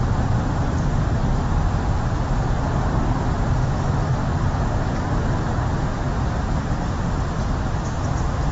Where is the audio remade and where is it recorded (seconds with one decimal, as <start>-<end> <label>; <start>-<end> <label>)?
0.0-0.7 recorded; 0.7-2.2 remade; 2.2-6.1 recorded; 6.1-6.7 remade; 6.7-8.5 recorded